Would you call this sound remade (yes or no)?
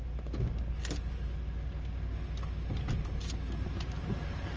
no